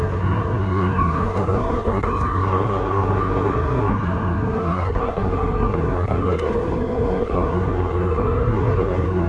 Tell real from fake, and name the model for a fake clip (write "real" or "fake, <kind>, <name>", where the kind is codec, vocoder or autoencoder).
fake, codec, SNAC